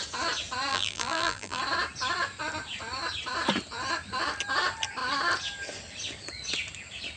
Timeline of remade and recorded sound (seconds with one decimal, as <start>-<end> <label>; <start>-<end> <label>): 0.0-0.7 recorded; 0.7-1.6 remade; 1.6-7.2 recorded